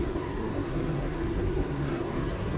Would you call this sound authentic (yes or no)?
no